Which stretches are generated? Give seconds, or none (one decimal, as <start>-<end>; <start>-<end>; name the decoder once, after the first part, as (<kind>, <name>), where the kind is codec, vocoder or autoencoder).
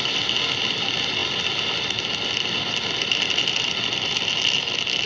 none